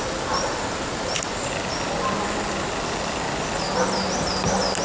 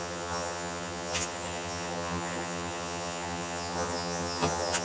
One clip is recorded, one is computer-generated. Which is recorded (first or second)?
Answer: first